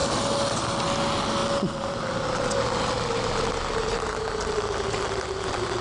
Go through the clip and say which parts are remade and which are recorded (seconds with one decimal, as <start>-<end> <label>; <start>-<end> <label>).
0.0-5.8 recorded

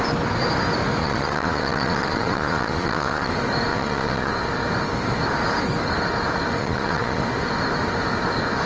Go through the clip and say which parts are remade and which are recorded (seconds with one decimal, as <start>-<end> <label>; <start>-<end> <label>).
0.0-1.0 recorded; 1.0-3.3 remade; 3.3-3.7 recorded; 3.7-4.3 remade; 4.3-6.6 recorded; 6.6-7.2 remade; 7.2-8.7 recorded

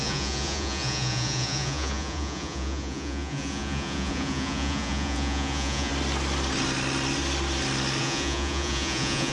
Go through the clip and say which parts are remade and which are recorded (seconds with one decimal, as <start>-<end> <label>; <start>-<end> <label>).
0.0-5.9 remade; 5.9-8.0 recorded; 8.0-9.3 remade

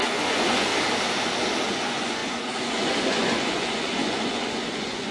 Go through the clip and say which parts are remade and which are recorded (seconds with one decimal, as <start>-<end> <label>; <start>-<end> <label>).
0.0-0.7 remade; 0.7-1.7 recorded; 1.7-5.1 remade

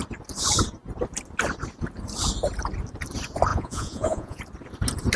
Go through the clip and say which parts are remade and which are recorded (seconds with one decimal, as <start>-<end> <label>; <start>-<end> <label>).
0.0-3.5 recorded; 3.5-4.4 remade; 4.4-5.2 recorded

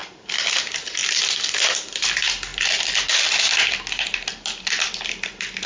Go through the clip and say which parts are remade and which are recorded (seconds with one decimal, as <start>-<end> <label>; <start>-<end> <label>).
0.0-5.7 recorded

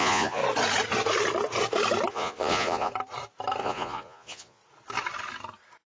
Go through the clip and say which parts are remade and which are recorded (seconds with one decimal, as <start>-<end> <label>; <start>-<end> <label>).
0.0-0.4 remade; 0.4-2.1 recorded; 2.1-2.9 remade; 2.9-3.6 recorded; 3.6-4.6 remade; 4.6-5.9 recorded